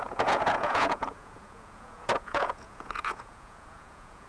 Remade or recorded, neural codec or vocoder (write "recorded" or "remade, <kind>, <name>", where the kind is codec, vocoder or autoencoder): remade, vocoder, Vocos